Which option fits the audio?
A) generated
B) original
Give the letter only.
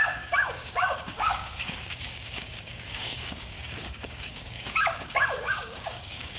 A